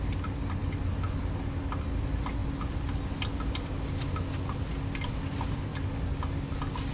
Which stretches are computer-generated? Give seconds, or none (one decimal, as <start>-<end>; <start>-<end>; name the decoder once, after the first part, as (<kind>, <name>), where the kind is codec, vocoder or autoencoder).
none